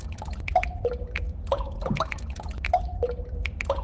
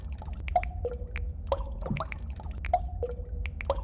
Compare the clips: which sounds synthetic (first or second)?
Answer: first